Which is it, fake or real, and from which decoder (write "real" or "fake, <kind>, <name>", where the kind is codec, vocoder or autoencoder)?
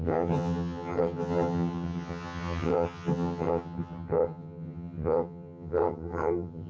fake, vocoder, HiFi-GAN